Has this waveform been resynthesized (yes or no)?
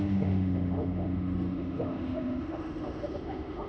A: yes